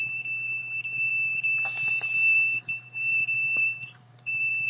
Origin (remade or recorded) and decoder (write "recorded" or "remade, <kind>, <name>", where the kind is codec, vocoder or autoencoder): remade, vocoder, BigVGAN v2